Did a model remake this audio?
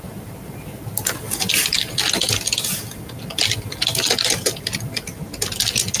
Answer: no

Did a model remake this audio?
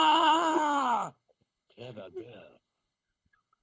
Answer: yes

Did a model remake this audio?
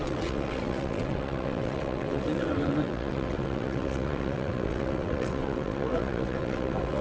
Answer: yes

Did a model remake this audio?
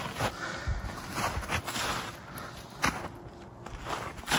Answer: no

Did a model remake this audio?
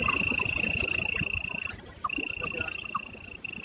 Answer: no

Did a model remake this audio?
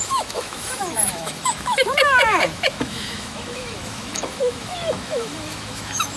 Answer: yes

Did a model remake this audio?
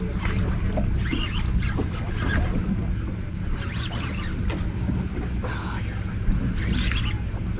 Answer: no